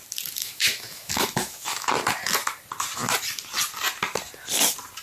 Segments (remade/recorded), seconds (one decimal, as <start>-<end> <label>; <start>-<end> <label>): 0.0-0.4 recorded; 0.4-1.9 remade; 1.9-5.0 recorded